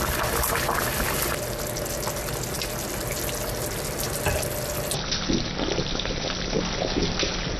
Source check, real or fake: real